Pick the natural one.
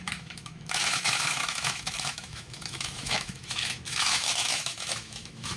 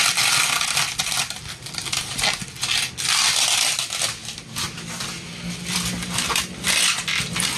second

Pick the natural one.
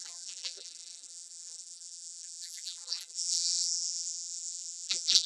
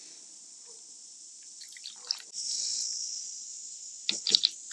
second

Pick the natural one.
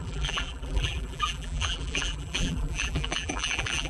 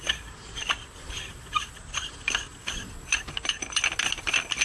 second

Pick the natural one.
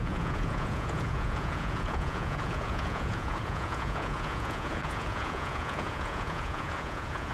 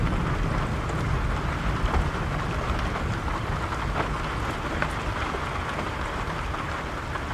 second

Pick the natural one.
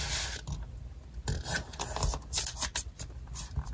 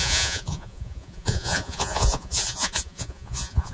first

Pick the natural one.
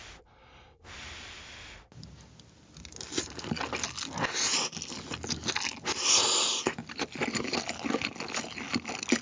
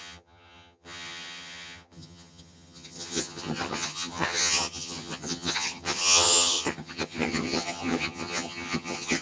first